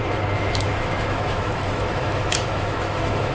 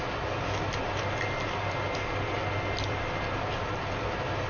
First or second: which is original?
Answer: second